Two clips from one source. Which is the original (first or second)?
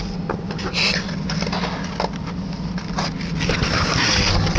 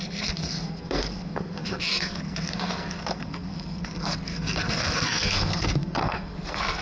first